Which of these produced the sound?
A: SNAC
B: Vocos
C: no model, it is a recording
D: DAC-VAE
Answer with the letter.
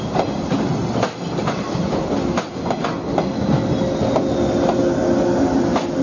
C